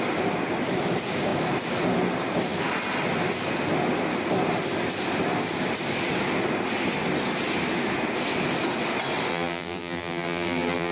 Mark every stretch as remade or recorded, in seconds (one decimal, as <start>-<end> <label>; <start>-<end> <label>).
0.0-9.3 recorded; 9.3-10.9 remade